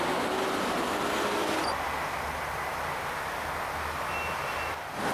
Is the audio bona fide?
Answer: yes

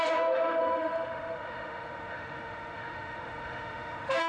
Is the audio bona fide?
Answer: no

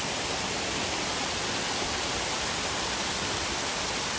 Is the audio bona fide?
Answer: yes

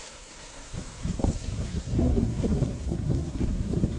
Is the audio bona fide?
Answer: no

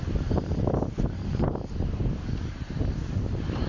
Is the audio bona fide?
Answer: yes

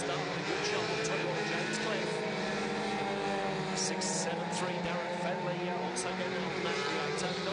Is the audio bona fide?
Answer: yes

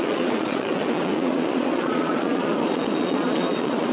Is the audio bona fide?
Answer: no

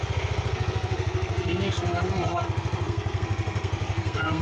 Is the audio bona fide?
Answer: no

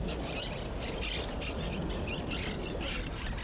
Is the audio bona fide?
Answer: yes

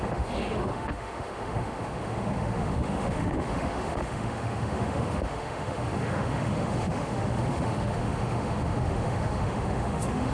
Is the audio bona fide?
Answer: no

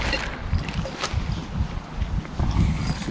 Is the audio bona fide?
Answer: yes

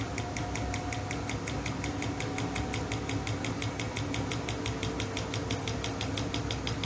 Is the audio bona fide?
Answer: yes